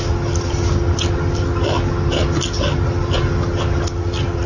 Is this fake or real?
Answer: real